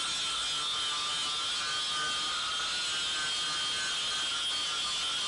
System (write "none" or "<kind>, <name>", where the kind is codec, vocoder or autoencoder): none